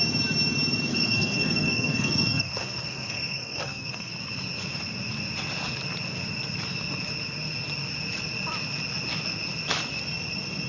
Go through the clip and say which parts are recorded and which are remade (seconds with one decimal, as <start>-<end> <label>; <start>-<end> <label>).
0.0-0.9 recorded; 0.9-4.1 remade; 4.1-10.7 recorded